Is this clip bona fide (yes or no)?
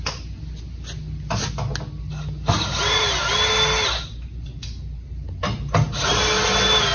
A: yes